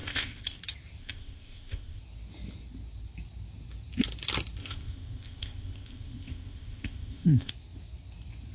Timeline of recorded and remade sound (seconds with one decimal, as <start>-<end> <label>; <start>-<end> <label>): 0.0-0.6 remade; 0.6-1.0 recorded; 1.0-2.0 remade; 2.0-4.6 recorded; 4.6-7.5 remade; 7.5-8.5 recorded

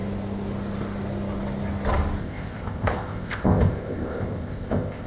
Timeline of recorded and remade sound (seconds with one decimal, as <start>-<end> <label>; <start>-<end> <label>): 0.0-2.2 recorded; 2.2-5.1 remade

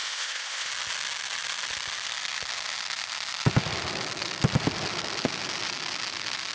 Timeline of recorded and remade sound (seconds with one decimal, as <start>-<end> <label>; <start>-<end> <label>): 0.0-0.7 remade; 0.7-6.5 recorded

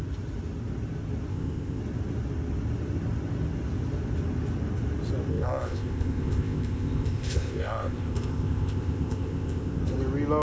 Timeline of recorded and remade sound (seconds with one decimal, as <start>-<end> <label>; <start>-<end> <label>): 0.0-1.3 recorded; 1.3-1.8 remade; 1.8-5.3 recorded; 5.3-9.8 remade; 9.8-10.4 recorded

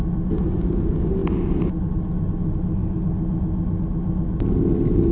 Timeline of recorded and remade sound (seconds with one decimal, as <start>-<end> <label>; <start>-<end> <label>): 0.0-5.1 recorded

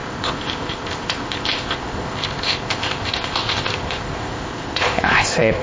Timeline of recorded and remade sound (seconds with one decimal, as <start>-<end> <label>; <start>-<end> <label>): 0.0-5.6 remade

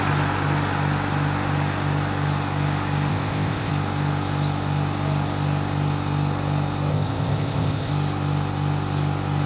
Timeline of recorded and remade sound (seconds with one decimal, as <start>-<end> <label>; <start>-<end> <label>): 0.0-3.1 recorded; 3.1-3.7 remade; 3.7-6.9 recorded; 6.9-7.9 remade; 7.9-9.5 recorded

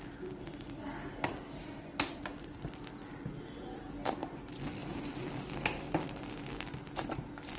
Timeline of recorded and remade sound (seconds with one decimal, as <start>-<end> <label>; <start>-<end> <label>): 0.0-7.6 recorded